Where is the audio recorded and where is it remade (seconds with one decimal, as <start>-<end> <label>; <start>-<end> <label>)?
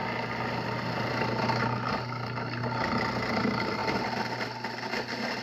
0.0-5.4 recorded